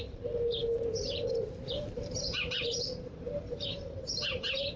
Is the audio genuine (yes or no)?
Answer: no